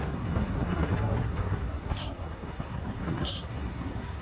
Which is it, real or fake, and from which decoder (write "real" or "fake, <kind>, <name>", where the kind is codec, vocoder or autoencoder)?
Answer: fake, codec, SNAC